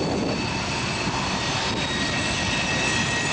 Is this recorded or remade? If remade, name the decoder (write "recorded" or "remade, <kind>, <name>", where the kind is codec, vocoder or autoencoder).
recorded